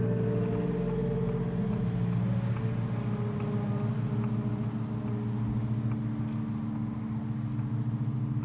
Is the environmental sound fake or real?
real